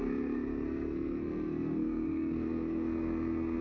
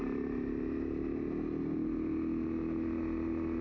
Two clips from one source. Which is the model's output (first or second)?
first